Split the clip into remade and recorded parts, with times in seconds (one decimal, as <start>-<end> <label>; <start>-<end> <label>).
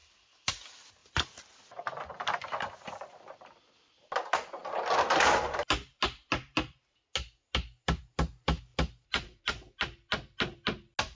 0.0-0.5 remade; 0.5-1.0 recorded; 1.0-3.6 remade; 3.6-11.1 recorded